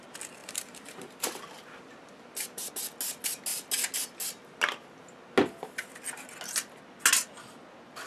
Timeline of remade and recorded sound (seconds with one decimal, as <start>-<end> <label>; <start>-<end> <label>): 0.0-0.4 recorded; 0.4-2.7 remade; 2.7-8.1 recorded